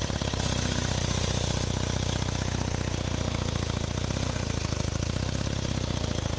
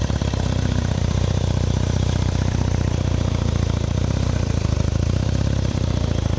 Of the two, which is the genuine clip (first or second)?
first